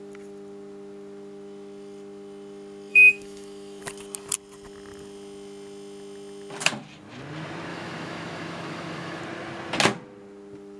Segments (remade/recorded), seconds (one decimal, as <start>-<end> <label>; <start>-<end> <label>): 0.0-2.9 recorded; 2.9-3.8 remade; 3.8-7.7 recorded; 7.7-9.2 remade; 9.2-10.8 recorded